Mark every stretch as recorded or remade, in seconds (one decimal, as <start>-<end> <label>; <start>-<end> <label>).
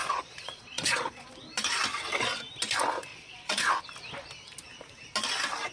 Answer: 0.0-1.3 remade; 1.3-3.1 recorded; 3.1-3.7 remade; 3.7-5.7 recorded